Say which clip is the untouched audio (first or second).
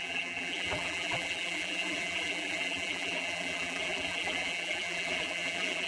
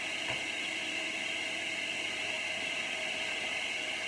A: second